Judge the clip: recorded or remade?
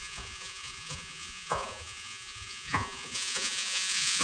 remade